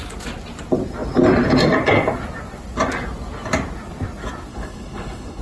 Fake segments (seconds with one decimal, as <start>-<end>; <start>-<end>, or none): 4.5-5.4

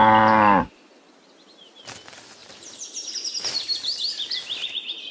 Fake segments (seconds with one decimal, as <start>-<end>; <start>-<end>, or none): 2.4-3.1